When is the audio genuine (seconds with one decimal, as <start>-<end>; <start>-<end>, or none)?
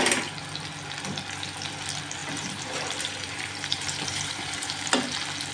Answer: 0.0-2.2; 4.9-5.5